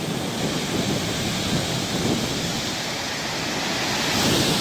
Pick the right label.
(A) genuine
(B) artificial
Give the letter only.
A